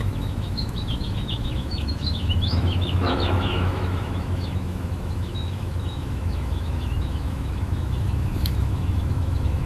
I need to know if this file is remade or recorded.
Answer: remade